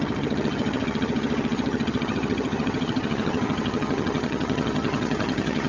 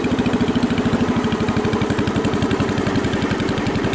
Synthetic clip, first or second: first